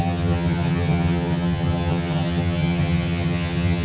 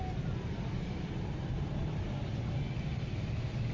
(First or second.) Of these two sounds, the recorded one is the second